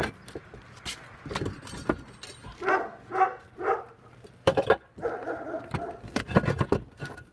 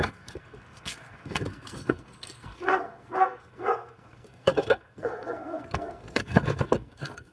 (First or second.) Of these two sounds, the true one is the first